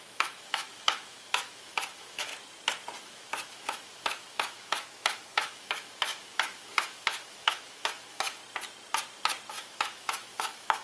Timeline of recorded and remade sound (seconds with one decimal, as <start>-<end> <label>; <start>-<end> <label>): 0.0-2.3 remade; 2.3-3.0 recorded; 3.0-8.4 remade; 8.4-9.5 recorded; 9.5-10.8 remade